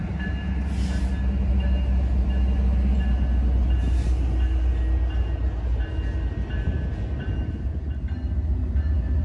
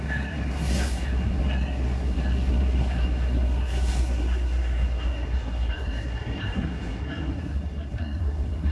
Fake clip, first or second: second